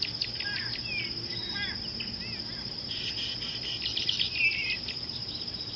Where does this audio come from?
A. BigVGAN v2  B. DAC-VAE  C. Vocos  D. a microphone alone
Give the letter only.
D